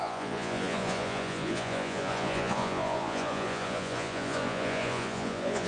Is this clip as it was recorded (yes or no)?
no